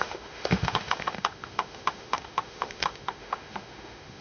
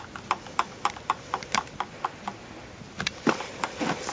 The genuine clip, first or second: second